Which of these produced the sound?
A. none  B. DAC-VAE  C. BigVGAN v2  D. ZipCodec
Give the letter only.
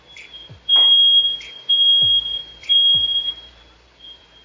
C